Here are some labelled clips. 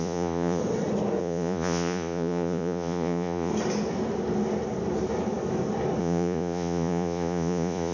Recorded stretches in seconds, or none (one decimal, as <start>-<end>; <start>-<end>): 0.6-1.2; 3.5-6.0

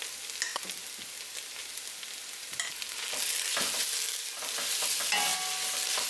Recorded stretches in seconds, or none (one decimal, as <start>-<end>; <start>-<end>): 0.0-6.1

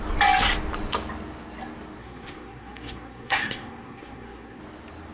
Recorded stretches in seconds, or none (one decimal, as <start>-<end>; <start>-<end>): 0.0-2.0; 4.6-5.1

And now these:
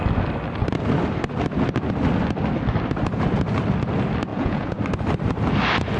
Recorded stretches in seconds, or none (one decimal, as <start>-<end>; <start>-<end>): 0.0-4.3; 4.8-6.0

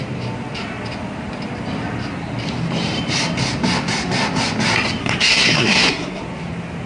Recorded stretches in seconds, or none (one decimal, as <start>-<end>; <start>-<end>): 0.0-5.0; 6.2-6.9

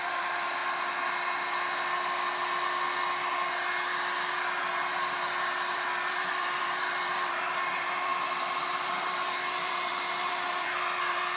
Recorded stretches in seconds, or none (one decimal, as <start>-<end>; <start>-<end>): 0.6-5.7; 8.1-8.8

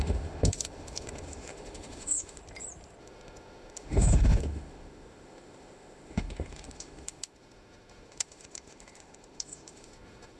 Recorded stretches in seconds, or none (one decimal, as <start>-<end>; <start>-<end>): 2.4-3.0